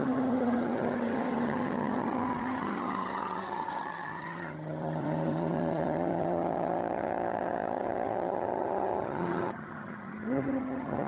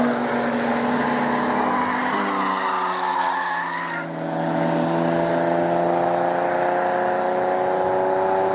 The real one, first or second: second